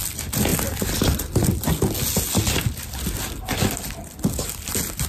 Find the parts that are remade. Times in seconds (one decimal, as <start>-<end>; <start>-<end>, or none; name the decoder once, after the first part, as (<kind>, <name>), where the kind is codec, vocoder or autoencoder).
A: none